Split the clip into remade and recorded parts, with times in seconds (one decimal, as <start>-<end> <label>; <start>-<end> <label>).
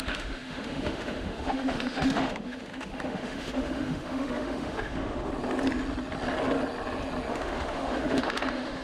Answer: 0.0-5.3 remade; 5.3-7.3 recorded; 7.3-8.8 remade